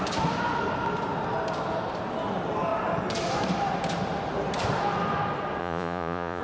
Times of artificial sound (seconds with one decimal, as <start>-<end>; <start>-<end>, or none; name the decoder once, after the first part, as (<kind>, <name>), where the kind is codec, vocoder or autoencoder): 5.6-6.4 (vocoder, Vocos)